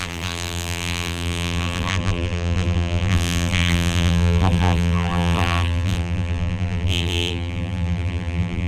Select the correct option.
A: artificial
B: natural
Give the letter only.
A